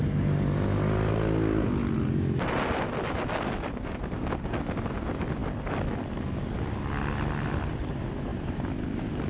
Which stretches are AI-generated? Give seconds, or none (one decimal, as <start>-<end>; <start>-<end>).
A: 8.3-9.3